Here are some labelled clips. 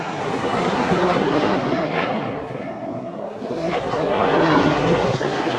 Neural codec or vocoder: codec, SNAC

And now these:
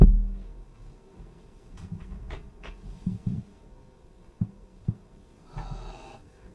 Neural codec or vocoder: codec, SNAC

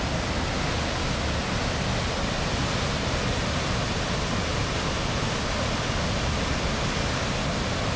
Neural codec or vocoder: none